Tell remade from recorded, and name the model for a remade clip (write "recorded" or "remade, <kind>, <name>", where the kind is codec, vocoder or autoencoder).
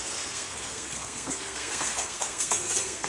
remade, codec, SNAC